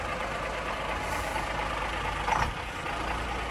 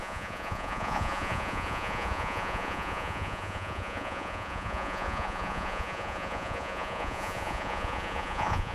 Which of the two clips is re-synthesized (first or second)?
second